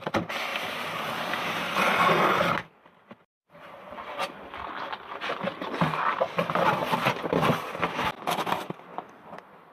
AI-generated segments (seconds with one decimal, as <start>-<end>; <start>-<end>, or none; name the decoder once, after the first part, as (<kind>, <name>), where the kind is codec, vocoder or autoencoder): none